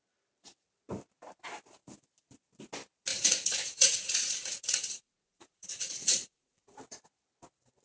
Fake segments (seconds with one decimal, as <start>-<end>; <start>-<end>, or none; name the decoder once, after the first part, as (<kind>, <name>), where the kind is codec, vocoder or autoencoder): 3.1-6.8 (vocoder, Vocos)